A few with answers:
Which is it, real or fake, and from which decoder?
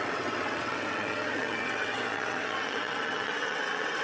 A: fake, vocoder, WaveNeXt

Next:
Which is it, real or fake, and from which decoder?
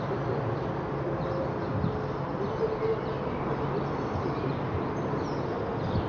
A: real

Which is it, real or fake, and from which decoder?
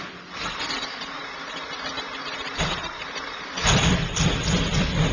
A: fake, vocoder, BigVGAN v2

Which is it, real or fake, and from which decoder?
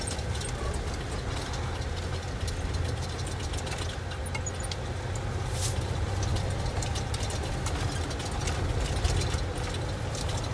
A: real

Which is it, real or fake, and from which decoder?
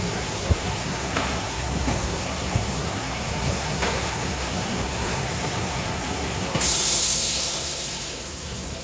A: fake, codec, SNAC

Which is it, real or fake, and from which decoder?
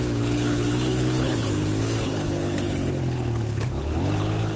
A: fake, codec, HILCodec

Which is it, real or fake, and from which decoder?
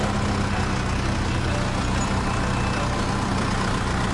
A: real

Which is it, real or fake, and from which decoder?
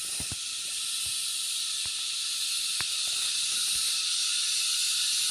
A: real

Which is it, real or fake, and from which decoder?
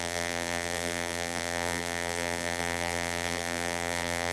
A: fake, vocoder, BigVGAN v2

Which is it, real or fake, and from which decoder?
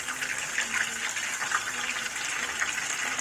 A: real